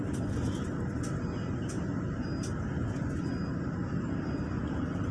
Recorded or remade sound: recorded